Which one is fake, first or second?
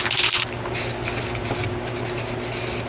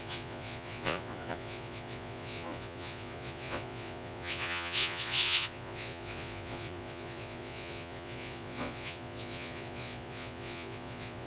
second